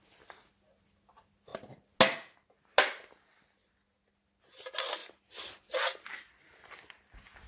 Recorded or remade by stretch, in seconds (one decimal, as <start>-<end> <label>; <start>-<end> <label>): 0.0-7.5 recorded